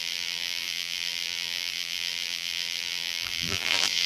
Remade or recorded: remade